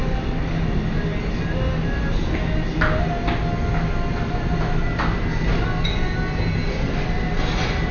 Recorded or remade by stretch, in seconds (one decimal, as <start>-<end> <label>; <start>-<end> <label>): 0.0-7.9 recorded